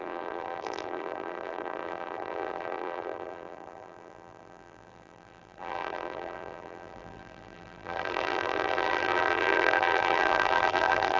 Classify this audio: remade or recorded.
remade